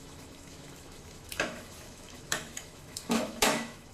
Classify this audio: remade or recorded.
remade